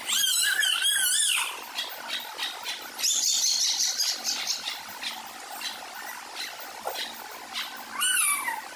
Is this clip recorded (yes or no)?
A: yes